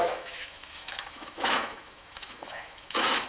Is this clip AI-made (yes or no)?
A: yes